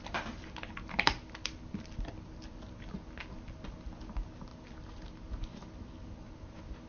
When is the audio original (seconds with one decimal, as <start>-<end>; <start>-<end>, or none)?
0.0-6.9